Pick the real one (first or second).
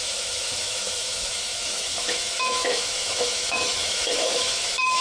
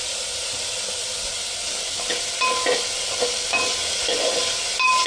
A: second